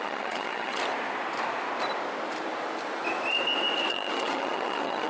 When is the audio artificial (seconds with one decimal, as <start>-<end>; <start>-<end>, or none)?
0.0-0.8; 3.9-5.1

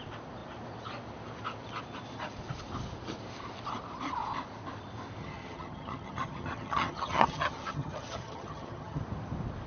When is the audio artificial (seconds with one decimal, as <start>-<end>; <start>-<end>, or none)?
5.2-9.0

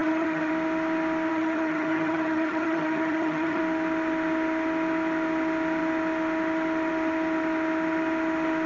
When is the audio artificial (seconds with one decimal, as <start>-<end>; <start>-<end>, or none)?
0.0-0.5; 1.3-3.6

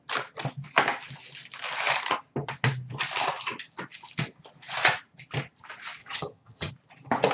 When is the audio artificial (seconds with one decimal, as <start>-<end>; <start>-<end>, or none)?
6.0-6.7

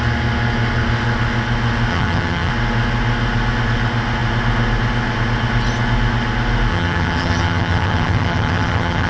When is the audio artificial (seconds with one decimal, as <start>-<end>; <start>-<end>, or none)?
1.9-2.5; 6.7-9.1

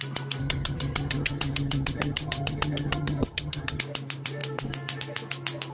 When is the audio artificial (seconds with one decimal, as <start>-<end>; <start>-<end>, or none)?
0.4-3.8

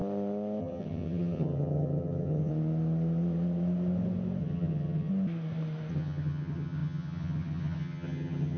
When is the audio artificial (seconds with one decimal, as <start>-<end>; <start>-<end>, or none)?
0.6-2.5; 4.4-5.1; 5.9-8.6